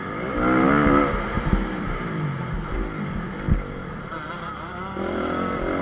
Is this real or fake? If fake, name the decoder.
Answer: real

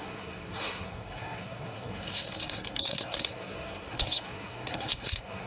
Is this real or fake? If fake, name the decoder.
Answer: fake, codec, SNAC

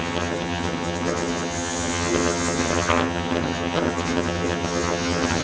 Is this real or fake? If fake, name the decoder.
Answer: fake, vocoder, HiFi-GAN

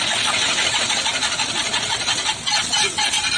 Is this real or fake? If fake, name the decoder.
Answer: real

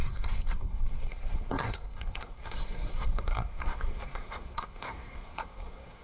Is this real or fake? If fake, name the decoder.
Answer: fake, codec, SNAC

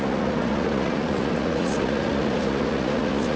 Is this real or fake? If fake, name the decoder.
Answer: fake, vocoder, Vocos